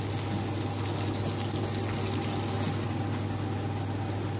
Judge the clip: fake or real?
real